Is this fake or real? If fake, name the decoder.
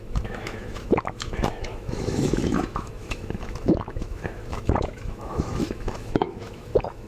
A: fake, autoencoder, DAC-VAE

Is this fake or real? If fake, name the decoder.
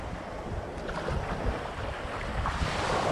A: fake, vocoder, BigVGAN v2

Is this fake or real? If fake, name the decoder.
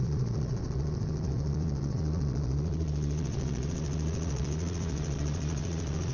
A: fake, vocoder, Vocos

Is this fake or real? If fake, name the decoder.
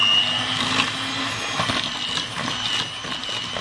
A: real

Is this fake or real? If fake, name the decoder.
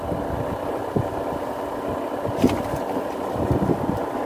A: real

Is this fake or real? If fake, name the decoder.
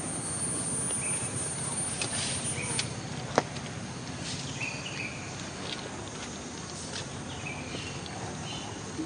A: real